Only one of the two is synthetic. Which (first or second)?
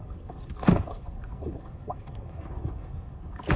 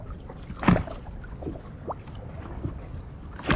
first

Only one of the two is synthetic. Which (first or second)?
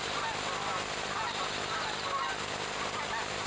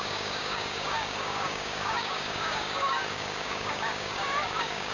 second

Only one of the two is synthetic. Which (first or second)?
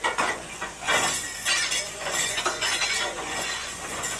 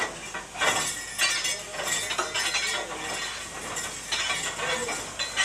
first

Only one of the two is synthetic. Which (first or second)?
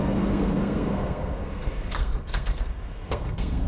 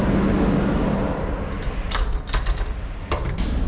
first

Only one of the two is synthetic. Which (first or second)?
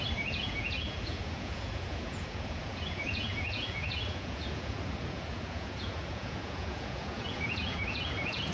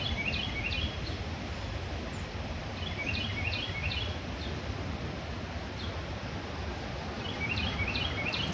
first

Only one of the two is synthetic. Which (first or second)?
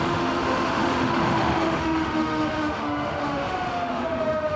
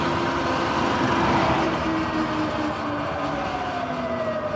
first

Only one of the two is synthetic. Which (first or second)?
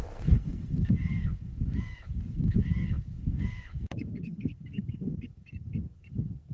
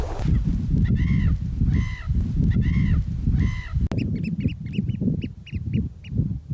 first